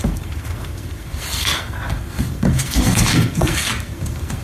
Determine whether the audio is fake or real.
fake